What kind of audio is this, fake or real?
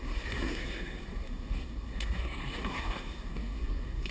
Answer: fake